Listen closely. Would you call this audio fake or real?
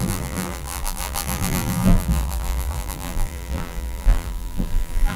fake